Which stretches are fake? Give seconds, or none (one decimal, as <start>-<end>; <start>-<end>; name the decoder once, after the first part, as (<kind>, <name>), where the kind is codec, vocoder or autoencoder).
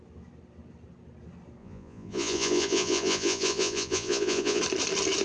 1.6-4.6 (vocoder, Vocos)